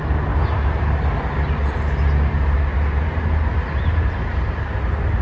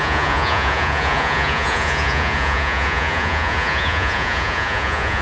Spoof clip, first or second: second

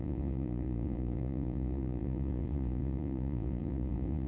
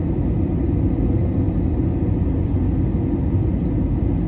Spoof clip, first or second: first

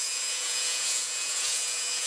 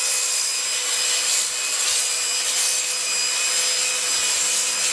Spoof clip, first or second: first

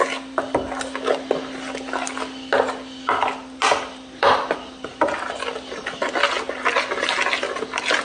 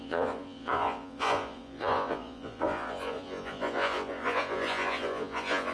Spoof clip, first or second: second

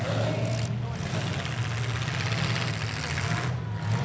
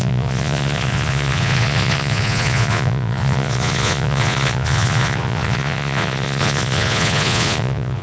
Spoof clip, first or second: second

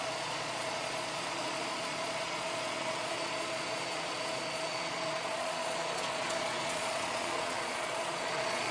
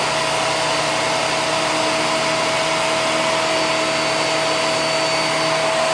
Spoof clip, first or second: first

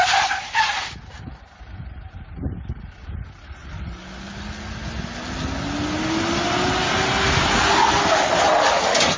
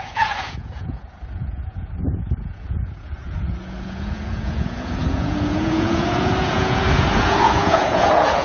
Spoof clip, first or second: second